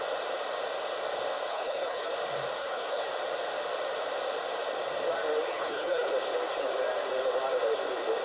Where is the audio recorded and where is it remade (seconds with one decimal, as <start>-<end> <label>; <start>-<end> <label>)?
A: 0.0-1.5 recorded; 1.5-2.1 remade; 2.1-2.6 recorded; 2.6-3.1 remade; 3.1-5.5 recorded; 5.5-6.1 remade; 6.1-8.2 recorded